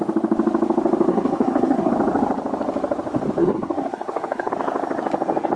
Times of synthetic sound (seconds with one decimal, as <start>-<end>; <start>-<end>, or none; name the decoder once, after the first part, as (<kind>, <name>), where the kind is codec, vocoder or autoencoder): 1.1-1.9 (codec, SNAC); 3.4-4.5